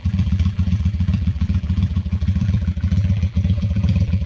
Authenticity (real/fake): fake